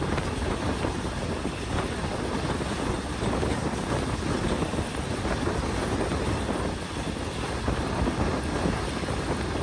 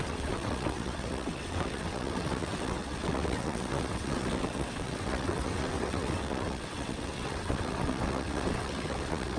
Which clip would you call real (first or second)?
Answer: first